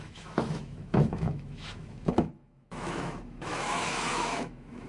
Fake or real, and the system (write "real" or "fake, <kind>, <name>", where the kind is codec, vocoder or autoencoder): fake, autoencoder, DAC-VAE